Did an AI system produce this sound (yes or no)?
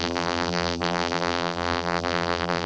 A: yes